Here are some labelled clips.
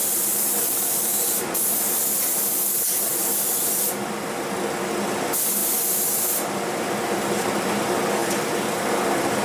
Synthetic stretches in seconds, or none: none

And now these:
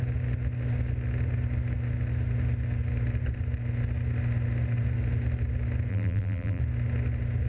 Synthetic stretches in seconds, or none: 5.9-6.6 (vocoder, BigVGAN v2)

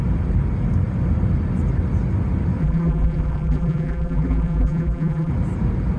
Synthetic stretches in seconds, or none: 2.6-5.3 (vocoder, BigVGAN v2)

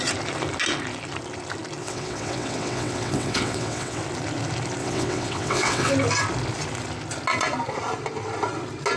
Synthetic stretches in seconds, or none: 1.8-4.0 (vocoder, WaveNeXt); 4.8-5.9

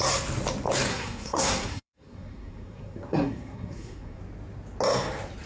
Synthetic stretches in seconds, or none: 0.9-4.2 (codec, SNAC)

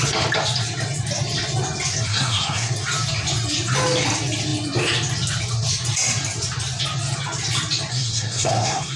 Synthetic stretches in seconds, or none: 2.1-2.7 (codec, SNAC); 7.9-9.0